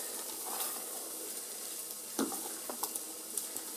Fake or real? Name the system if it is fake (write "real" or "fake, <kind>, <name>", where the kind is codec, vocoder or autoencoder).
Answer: real